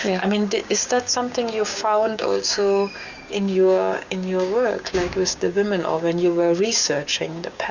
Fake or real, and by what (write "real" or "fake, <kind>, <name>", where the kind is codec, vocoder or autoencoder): fake, codec, DAC